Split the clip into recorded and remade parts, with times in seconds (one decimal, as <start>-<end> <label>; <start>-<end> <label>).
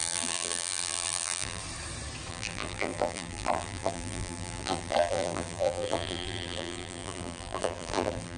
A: 0.0-1.6 remade; 1.6-2.3 recorded; 2.3-8.4 remade